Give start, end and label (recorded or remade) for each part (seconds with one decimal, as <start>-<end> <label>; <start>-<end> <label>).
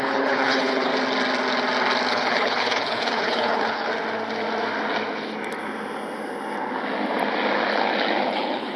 0.0-0.9 remade; 0.9-2.1 recorded; 2.1-3.9 remade; 3.9-8.3 recorded; 8.3-8.8 remade